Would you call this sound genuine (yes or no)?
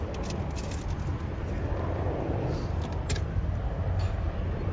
yes